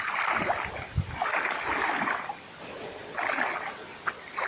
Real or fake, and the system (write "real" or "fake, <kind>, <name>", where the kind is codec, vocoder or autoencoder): real